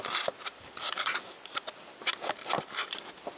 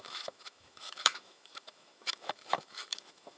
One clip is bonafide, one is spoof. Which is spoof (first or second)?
second